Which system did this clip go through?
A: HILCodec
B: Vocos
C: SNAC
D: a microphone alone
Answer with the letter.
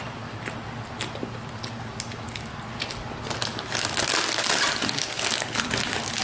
D